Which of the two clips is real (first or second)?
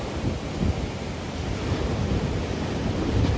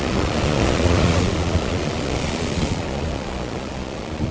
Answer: first